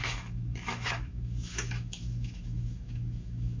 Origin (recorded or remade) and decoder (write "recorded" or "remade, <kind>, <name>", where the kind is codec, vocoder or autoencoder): remade, autoencoder, DAC-VAE